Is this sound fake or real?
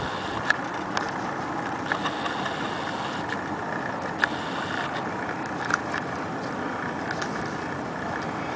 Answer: real